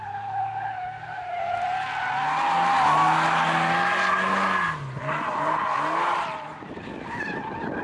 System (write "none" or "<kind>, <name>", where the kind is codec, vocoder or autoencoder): none